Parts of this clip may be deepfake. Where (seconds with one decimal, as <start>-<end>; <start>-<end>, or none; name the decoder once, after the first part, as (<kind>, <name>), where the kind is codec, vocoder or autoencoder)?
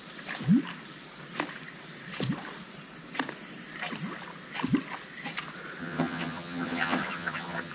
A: 5.8-7.7 (vocoder, HiFi-GAN)